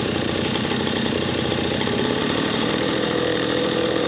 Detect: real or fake fake